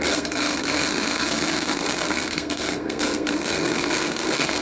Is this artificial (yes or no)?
yes